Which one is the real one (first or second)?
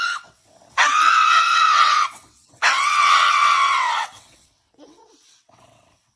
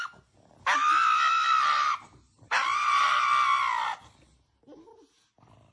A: second